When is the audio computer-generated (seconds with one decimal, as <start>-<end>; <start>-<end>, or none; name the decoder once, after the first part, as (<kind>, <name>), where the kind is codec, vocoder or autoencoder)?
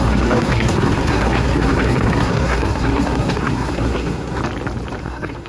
0.0-4.4 (codec, SNAC); 5.0-5.5